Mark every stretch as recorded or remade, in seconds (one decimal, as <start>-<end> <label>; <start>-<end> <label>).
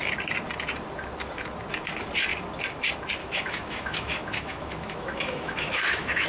0.0-3.2 recorded; 3.2-6.3 remade